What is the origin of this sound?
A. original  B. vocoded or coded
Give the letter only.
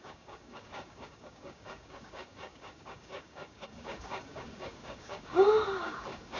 B